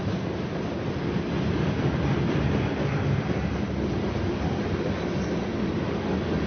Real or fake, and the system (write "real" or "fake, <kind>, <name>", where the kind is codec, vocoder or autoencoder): real